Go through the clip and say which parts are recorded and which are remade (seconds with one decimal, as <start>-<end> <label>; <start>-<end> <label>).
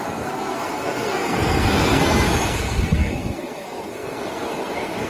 0.0-5.1 remade